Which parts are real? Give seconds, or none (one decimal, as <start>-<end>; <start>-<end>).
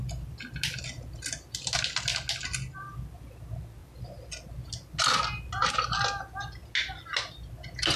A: 0.0-8.0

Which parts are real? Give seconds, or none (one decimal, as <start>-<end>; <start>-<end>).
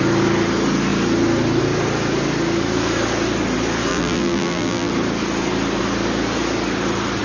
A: 0.0-3.9; 4.9-7.2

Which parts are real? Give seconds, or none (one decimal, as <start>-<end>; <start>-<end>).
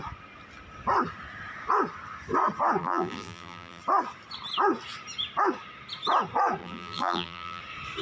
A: 0.0-2.8; 3.8-6.6; 7.6-8.0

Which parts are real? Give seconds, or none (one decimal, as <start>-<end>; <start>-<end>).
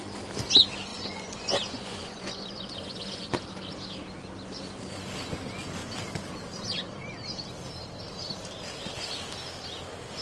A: 0.0-0.9; 3.4-10.2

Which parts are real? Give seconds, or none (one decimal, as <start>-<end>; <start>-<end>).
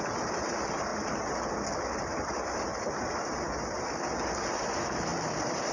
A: 0.9-1.5; 2.7-4.6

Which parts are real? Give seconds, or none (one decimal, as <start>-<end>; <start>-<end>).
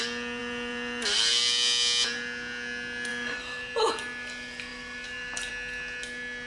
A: 0.0-0.4; 1.3-3.1; 3.9-4.7; 5.5-6.5